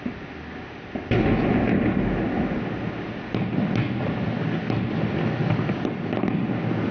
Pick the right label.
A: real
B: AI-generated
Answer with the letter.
A